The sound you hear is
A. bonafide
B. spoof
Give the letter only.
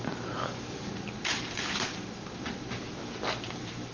B